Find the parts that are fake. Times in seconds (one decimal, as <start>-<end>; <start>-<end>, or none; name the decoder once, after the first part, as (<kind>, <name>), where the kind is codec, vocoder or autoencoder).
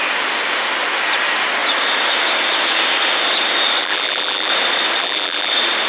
3.8-4.5 (vocoder, BigVGAN v2); 5.0-5.5